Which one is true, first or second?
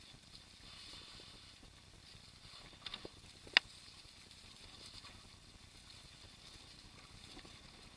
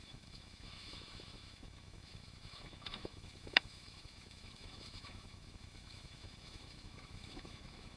first